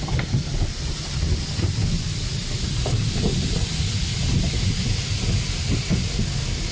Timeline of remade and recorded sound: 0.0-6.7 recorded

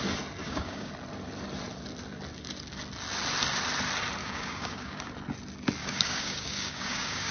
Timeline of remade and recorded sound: 0.0-0.4 recorded; 0.4-0.9 remade; 0.9-4.2 recorded; 4.2-5.1 remade; 5.1-5.8 recorded; 5.8-7.3 remade